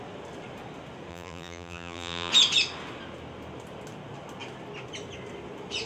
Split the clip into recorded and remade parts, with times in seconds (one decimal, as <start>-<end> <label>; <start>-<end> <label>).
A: 0.0-1.1 recorded; 1.1-2.3 remade; 2.3-5.9 recorded